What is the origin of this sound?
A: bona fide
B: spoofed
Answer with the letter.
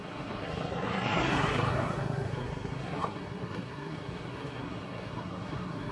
B